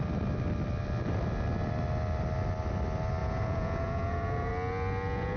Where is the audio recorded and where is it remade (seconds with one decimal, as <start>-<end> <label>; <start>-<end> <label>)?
0.0-3.2 recorded; 3.2-4.5 remade; 4.5-5.4 recorded